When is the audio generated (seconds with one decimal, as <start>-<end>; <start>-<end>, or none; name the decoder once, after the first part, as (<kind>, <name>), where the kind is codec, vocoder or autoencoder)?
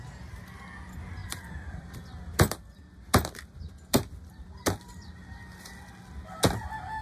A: 1.2-5.4 (vocoder, BigVGAN v2)